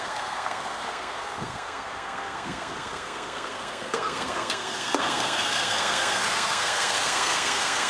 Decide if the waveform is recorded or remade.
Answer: remade